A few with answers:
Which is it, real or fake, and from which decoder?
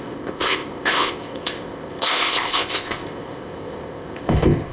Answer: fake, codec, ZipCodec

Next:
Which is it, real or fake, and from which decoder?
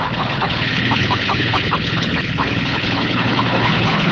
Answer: fake, codec, HILCodec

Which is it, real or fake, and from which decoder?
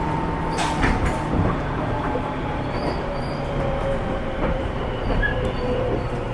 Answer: fake, vocoder, BigVGAN v2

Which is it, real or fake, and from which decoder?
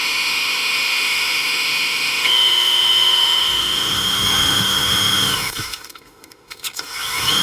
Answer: fake, autoencoder, DAC-VAE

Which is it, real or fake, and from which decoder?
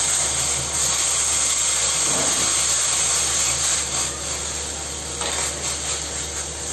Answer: real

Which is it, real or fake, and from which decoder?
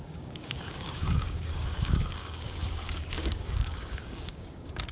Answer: fake, codec, DAC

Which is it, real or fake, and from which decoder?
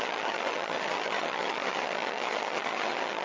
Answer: fake, vocoder, HiFi-GAN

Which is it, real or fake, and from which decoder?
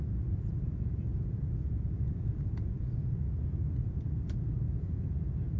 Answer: fake, vocoder, Vocos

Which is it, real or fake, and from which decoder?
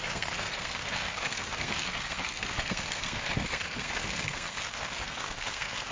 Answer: fake, codec, SNAC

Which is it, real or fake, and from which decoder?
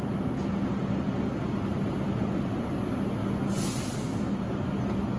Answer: real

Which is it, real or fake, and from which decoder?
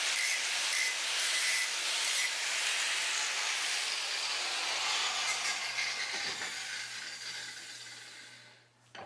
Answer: real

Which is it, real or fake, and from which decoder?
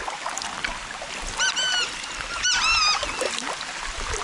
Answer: real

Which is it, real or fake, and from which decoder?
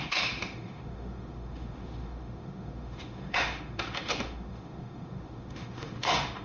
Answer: fake, autoencoder, DAC-VAE